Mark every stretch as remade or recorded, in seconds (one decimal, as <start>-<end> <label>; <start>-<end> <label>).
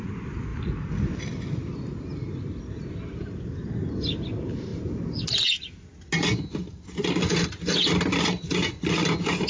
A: 0.0-9.5 recorded